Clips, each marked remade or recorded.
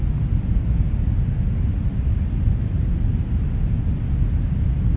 recorded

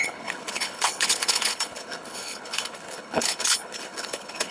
remade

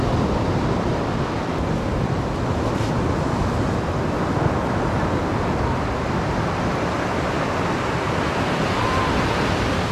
recorded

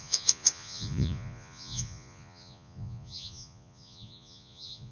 remade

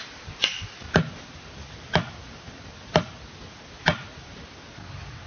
recorded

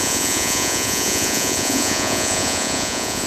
remade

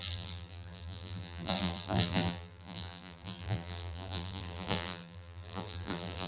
remade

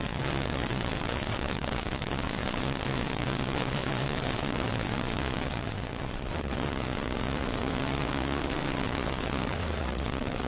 remade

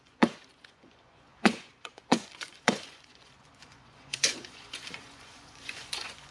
remade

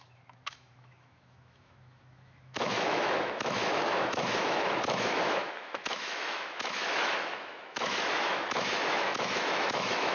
remade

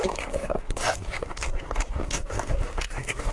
remade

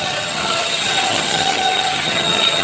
remade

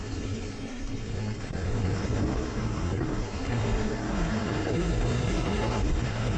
remade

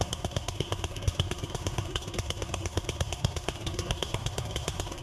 remade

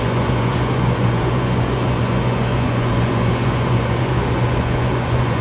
remade